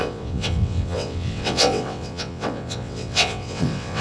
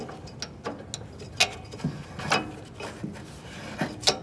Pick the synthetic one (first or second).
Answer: first